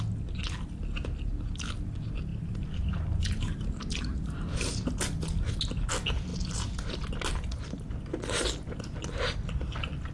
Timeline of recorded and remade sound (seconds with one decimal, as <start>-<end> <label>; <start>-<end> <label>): 0.0-2.3 recorded; 2.3-4.5 remade; 4.5-10.1 recorded